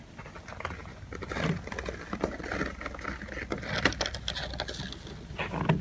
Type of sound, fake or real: real